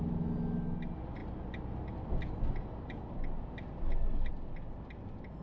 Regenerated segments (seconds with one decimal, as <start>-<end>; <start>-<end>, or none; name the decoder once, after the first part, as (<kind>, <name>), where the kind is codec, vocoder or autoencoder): none